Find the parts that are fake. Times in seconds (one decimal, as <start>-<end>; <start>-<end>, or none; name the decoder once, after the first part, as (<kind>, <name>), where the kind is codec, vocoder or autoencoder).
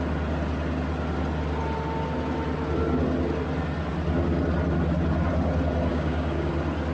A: 5.9-6.5 (codec, DAC)